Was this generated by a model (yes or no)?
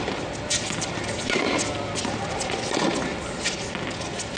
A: no